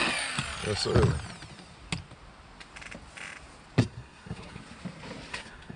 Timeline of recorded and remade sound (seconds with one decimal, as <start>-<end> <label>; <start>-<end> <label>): 0.0-3.8 recorded; 3.8-4.6 remade; 4.6-5.3 recorded; 5.3-5.8 remade